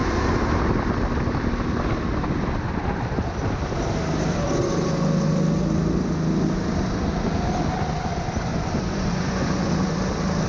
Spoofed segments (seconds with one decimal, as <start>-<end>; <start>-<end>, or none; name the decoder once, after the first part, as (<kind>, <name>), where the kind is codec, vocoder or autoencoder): 8.5-9.7 (vocoder, Vocos)